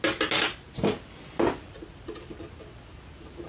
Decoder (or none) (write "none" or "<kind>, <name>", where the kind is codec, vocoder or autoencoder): none